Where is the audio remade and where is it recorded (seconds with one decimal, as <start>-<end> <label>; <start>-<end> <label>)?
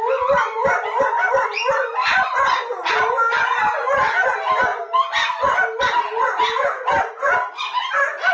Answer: 0.0-8.3 recorded